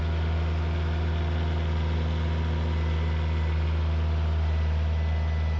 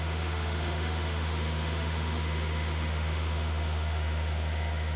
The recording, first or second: first